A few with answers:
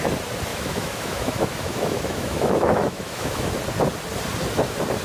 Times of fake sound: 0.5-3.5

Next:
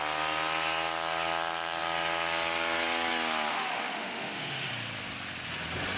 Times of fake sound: 3.5-4.7